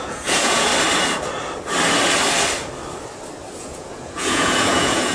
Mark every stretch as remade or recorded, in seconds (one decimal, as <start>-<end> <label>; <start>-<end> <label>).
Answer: 0.0-0.7 remade; 0.7-3.6 recorded; 3.6-5.1 remade